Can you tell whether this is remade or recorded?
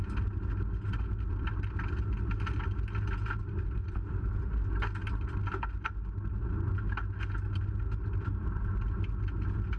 recorded